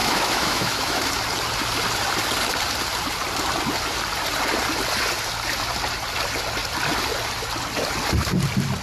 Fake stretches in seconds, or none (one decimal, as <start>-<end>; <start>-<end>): 0.0-1.1